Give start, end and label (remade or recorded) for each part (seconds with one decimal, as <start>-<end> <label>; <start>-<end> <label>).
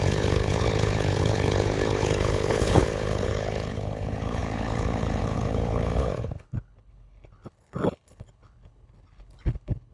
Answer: 0.0-9.9 remade